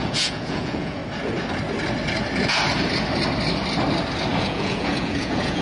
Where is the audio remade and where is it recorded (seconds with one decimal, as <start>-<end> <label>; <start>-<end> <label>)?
0.0-1.0 remade; 1.0-4.4 recorded; 4.4-5.6 remade